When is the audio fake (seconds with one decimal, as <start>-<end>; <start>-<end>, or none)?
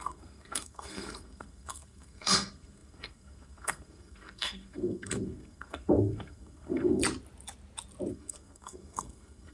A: 0.0-7.0; 8.1-9.5